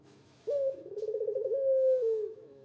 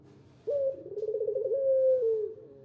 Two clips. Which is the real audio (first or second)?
second